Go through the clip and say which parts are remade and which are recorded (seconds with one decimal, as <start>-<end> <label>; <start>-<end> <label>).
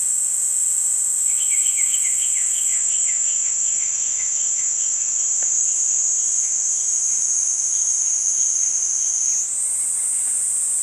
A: 0.0-9.3 remade; 9.3-10.8 recorded